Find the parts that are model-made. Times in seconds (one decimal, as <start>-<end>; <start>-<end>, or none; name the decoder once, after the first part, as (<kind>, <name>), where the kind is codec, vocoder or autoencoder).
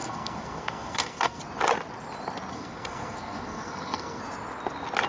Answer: 0.0-1.4 (codec, SNAC); 2.5-4.2